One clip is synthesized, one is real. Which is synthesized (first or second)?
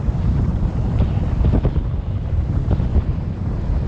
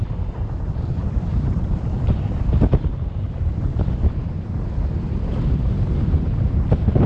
second